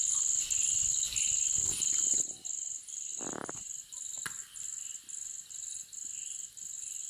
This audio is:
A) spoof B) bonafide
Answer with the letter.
B